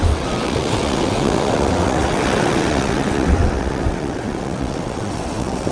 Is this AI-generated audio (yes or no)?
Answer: yes